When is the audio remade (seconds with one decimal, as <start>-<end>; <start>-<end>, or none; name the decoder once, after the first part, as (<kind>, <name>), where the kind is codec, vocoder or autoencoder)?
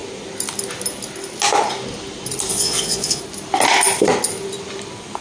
2.5-3.2 (vocoder, Vocos)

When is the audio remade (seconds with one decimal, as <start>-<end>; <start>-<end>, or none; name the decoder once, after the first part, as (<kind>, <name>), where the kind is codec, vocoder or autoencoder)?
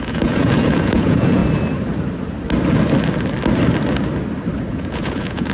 0.0-1.4 (vocoder, Vocos); 4.7-5.5